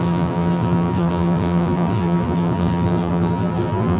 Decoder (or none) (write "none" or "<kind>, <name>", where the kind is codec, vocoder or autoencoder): vocoder, BigVGAN v2